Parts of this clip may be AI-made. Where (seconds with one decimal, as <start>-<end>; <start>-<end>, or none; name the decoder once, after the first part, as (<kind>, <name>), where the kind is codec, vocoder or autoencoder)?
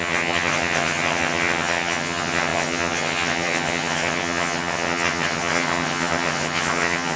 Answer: 0.0-7.2 (vocoder, HiFi-GAN)